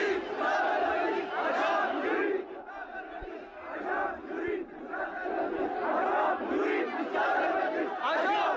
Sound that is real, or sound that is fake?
real